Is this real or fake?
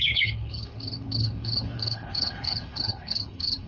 fake